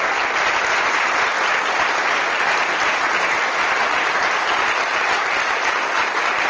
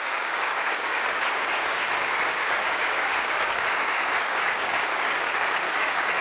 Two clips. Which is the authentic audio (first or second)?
first